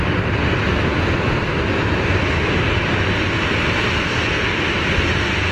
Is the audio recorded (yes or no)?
yes